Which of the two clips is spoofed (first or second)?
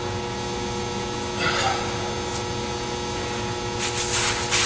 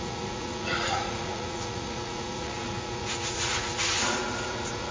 second